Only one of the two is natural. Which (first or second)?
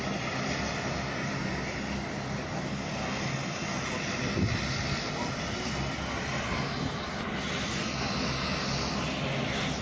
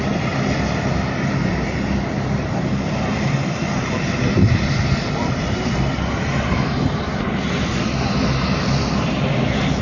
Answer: first